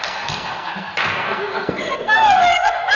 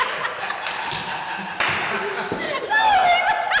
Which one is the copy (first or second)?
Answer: first